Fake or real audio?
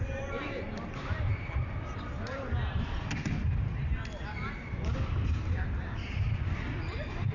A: real